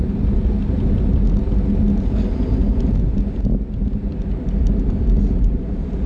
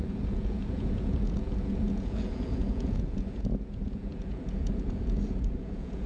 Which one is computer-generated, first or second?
second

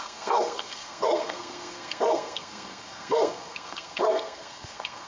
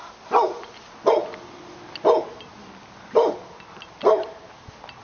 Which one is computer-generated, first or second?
first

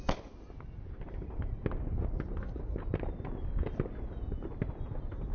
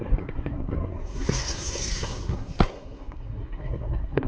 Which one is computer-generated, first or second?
second